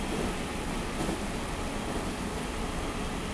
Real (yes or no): yes